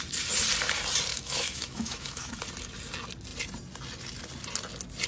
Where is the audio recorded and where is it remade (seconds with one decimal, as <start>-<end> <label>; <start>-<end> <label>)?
0.0-1.1 recorded; 1.1-2.4 remade; 2.4-5.1 recorded